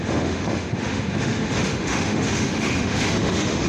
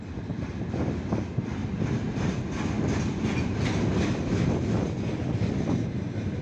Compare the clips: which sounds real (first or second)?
second